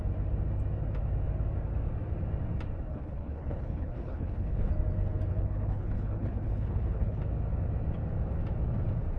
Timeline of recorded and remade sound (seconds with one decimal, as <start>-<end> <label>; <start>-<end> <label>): 0.0-2.9 recorded; 2.9-4.7 remade; 4.7-5.3 recorded; 5.3-7.2 remade; 7.2-9.2 recorded